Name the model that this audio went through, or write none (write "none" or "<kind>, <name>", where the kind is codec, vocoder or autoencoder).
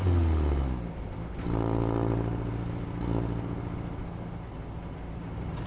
none